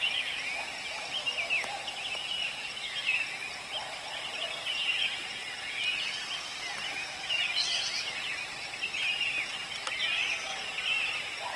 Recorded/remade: recorded